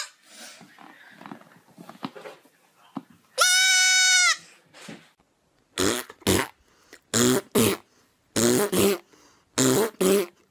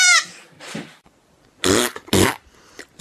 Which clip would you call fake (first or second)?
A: second